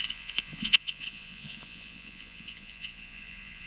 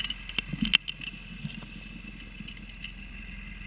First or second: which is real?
second